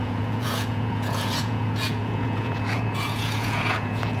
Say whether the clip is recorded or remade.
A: remade